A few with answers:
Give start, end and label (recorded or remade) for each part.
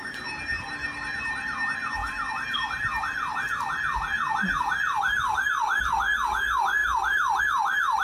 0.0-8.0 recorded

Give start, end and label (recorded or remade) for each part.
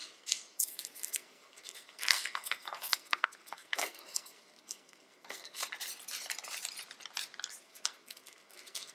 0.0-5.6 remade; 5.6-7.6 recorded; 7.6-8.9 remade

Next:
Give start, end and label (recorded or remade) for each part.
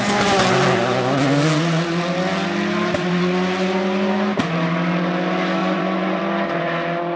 0.0-5.6 recorded; 5.6-6.2 remade; 6.2-7.2 recorded